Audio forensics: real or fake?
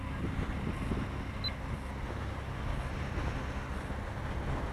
real